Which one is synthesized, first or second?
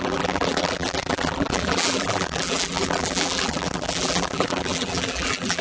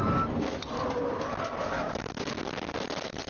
first